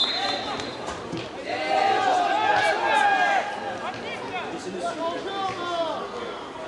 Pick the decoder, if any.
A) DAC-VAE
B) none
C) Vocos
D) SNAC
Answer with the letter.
B